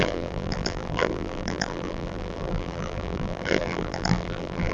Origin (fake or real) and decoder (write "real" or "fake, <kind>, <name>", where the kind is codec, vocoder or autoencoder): fake, vocoder, BigVGAN v2